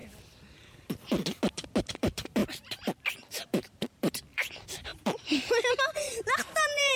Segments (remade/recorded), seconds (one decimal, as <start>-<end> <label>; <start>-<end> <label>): 0.0-1.9 recorded; 1.9-7.0 remade